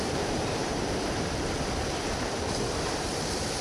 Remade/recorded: recorded